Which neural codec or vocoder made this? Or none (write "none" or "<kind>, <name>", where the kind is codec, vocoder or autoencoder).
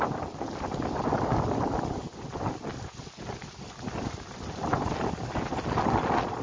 none